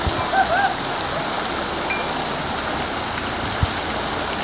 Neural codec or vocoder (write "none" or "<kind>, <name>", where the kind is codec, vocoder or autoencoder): none